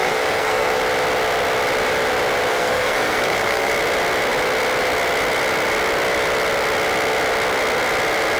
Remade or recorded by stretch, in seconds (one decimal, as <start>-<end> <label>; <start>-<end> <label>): 0.0-0.8 remade; 0.8-2.5 recorded; 2.5-3.7 remade; 3.7-8.4 recorded

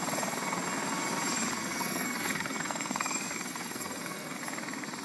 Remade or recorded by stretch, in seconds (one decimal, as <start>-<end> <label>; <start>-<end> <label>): 0.0-1.6 recorded; 1.6-4.4 remade; 4.4-5.0 recorded

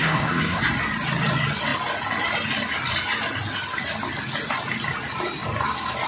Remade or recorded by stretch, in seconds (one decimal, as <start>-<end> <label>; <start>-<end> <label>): 0.0-0.6 remade; 0.6-6.1 recorded

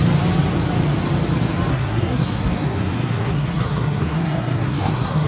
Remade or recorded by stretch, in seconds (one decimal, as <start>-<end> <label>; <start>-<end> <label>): 0.0-1.7 recorded; 1.7-5.3 remade

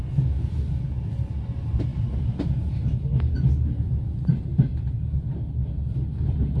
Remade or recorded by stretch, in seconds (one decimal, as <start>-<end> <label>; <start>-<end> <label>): 0.0-6.6 recorded

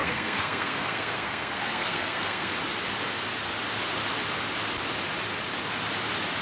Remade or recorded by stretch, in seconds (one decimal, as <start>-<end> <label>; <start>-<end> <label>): 0.0-2.5 remade; 2.5-6.4 recorded

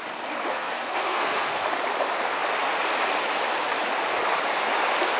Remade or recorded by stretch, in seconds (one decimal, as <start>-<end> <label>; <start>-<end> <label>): 0.0-0.5 recorded; 0.5-1.6 remade; 1.6-5.2 recorded